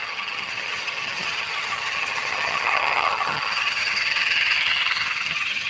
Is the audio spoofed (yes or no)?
yes